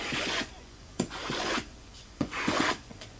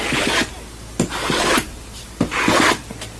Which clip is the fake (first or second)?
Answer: first